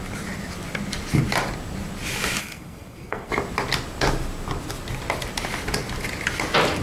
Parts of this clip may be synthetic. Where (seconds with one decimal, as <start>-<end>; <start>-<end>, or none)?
2.4-3.3